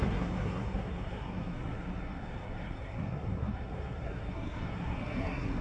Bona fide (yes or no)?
no